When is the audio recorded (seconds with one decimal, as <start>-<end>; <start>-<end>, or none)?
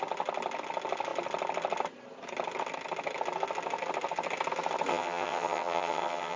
0.0-4.9